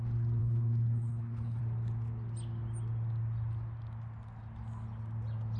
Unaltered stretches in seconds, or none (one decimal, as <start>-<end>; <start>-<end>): 0.0-0.4; 1.6-5.6